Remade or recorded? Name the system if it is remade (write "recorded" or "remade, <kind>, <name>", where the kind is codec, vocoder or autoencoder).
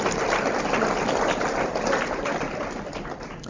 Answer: recorded